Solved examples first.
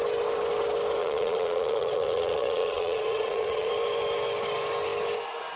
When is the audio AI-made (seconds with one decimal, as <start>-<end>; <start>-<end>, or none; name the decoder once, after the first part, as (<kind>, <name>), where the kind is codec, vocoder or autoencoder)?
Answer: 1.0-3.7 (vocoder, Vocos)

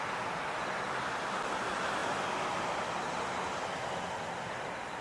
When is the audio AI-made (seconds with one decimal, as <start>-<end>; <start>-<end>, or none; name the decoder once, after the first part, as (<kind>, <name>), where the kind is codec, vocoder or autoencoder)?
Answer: none

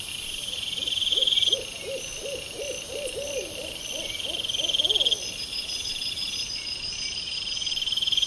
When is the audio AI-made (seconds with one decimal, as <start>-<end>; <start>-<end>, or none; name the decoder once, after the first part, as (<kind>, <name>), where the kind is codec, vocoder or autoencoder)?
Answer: 0.0-2.1 (vocoder, BigVGAN v2); 5.4-8.3